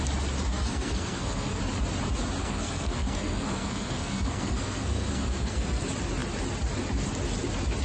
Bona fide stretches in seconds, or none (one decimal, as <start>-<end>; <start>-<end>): 0.0-0.5; 1.6-2.4; 5.8-7.8